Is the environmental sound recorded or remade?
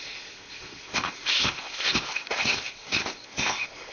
remade